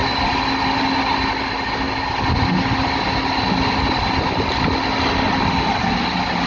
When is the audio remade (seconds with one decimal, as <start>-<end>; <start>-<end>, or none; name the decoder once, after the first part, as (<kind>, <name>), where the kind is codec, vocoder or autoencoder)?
none